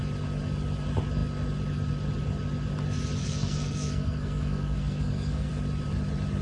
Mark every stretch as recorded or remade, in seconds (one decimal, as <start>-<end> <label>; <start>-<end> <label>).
0.0-3.2 recorded; 3.2-5.5 remade; 5.5-6.4 recorded